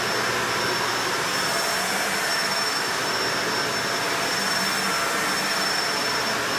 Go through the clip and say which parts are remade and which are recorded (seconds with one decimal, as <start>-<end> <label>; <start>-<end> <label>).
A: 0.0-2.3 recorded; 2.3-3.0 remade; 3.0-6.6 recorded